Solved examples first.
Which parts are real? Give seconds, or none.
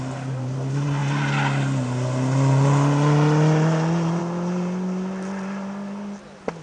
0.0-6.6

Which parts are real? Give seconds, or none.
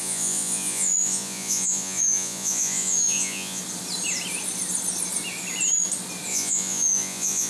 3.6-6.3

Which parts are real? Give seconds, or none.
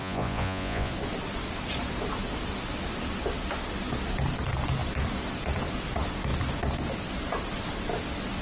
0.9-8.4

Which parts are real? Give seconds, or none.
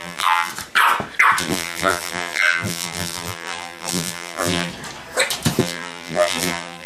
0.5-1.4; 4.7-5.6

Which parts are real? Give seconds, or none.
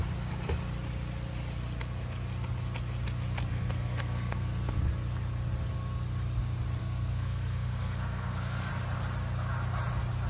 0.0-3.5; 4.9-6.8; 8.7-10.3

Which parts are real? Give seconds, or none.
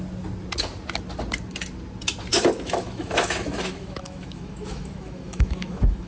0.0-2.3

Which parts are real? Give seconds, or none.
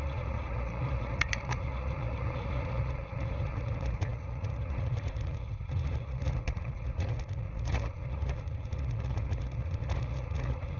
none